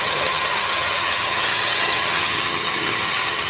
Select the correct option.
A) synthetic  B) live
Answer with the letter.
A